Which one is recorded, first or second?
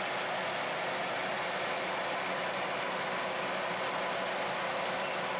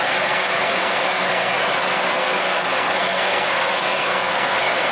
first